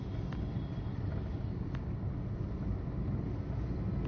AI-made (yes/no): no